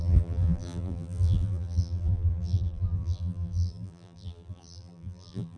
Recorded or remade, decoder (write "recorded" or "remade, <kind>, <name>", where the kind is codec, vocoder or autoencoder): remade, vocoder, BigVGAN v2